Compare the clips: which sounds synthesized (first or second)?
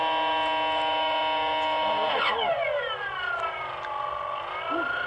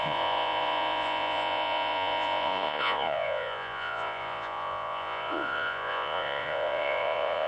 second